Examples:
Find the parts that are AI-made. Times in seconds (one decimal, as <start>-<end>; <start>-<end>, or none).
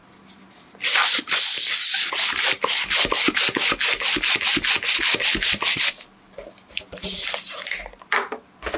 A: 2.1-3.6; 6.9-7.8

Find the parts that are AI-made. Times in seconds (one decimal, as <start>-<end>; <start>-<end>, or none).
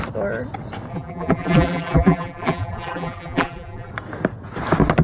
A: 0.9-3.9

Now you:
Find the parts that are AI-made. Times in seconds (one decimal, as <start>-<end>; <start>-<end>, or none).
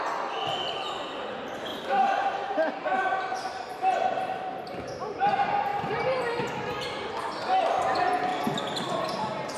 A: 1.7-4.8; 5.7-7.1; 8.3-9.0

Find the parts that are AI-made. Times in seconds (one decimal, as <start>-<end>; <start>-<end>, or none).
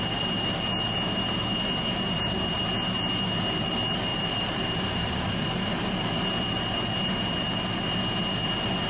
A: 4.1-5.9